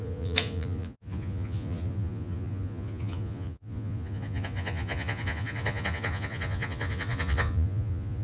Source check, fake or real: fake